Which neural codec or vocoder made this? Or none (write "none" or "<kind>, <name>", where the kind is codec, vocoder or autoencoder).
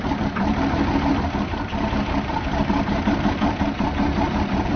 vocoder, BigVGAN v2